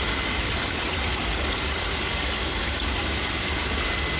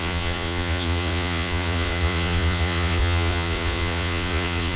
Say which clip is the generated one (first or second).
second